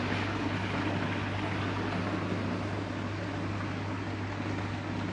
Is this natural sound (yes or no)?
yes